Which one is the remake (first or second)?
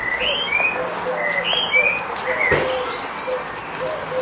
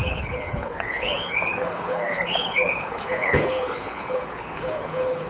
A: second